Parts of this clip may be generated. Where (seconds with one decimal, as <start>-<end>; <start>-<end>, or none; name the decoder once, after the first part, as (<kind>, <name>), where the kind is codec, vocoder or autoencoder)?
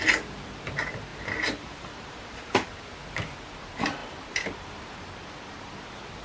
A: 1.1-2.8 (vocoder, BigVGAN v2); 4.0-5.0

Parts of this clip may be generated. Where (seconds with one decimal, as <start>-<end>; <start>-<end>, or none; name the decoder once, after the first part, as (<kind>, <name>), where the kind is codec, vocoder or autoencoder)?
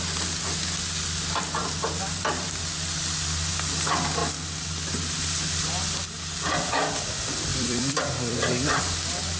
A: 1.6-2.6 (vocoder, BigVGAN v2); 7.5-8.8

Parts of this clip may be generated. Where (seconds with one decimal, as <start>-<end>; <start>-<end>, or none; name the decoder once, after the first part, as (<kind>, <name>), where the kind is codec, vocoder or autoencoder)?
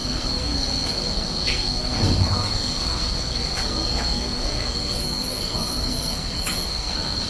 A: 0.0-7.3 (codec, SNAC)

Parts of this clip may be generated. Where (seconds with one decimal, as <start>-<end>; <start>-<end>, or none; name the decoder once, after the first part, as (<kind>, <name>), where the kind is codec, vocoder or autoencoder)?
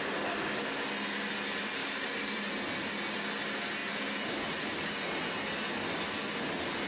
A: 1.8-2.5 (vocoder, BigVGAN v2)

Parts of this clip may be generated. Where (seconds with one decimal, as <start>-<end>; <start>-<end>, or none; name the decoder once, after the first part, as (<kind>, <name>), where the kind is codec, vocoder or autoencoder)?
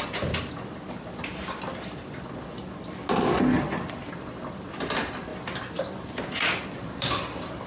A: 0.0-2.5 (vocoder, BigVGAN v2); 4.1-5.3; 6.6-7.7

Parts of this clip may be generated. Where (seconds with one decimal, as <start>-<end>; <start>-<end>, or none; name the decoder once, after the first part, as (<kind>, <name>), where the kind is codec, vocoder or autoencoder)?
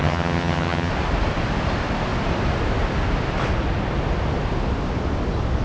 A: 0.0-0.9 (vocoder, HiFi-GAN)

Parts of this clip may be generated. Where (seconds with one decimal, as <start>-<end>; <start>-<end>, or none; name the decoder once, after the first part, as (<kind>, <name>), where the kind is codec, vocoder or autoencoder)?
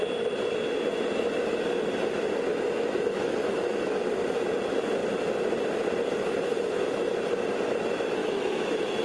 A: 2.5-4.0 (autoencoder, DAC-VAE); 8.2-9.0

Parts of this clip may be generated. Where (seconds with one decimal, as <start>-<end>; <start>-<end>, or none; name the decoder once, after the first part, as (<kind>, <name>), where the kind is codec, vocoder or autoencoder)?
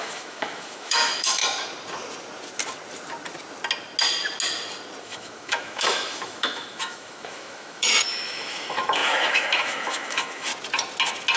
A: 0.0-1.4 (autoencoder, DAC-VAE); 5.0-10.5